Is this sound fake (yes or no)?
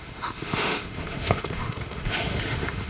yes